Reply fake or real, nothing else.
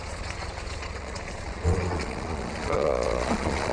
fake